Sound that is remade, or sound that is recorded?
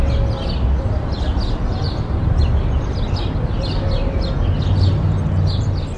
recorded